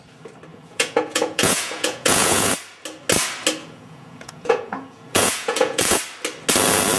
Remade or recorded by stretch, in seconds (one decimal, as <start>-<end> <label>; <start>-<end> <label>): 0.0-0.5 recorded; 0.5-2.5 remade; 2.5-3.6 recorded; 3.6-6.0 remade; 6.0-7.0 recorded